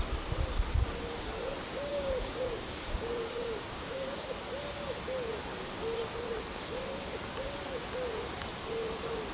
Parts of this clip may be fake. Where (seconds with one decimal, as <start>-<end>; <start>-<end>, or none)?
1.9-4.3